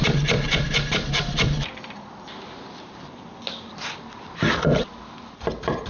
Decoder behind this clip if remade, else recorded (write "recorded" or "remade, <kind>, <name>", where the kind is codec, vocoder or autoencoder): recorded